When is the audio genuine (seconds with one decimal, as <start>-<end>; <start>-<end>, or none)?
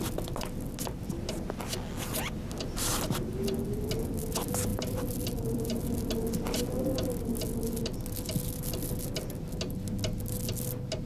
0.0-4.7; 5.8-11.1